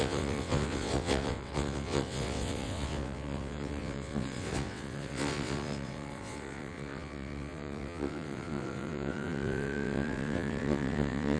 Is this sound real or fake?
fake